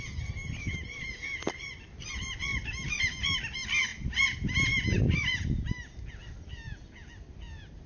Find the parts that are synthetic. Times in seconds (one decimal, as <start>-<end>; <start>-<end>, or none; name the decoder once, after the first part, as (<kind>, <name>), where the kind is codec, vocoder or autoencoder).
2.5-3.0 (vocoder, BigVGAN v2)

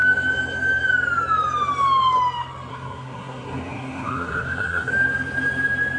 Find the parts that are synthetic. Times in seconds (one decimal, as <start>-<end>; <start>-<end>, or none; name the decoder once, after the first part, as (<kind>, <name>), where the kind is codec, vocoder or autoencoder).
2.7-4.9 (codec, SNAC)

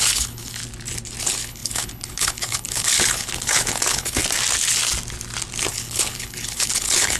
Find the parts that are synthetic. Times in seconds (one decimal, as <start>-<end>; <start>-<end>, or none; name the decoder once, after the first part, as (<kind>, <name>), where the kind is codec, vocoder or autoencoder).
0.0-0.6 (codec, HILCodec); 1.2-4.2; 5.7-7.2

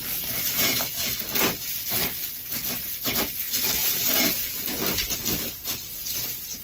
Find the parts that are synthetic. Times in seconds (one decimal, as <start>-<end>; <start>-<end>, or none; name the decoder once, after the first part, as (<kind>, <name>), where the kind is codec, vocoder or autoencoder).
3.8-4.5 (vocoder, Vocos)

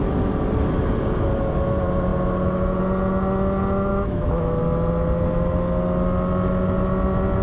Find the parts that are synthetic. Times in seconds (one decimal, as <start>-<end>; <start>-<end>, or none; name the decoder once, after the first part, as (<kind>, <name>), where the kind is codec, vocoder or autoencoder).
3.9-4.6 (autoencoder, DAC-VAE)

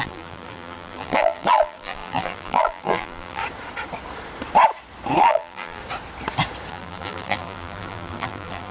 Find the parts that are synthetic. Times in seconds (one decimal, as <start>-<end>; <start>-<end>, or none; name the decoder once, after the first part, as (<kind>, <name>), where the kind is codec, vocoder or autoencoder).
0.0-3.4 (vocoder, BigVGAN v2); 5.2-5.8; 6.7-8.7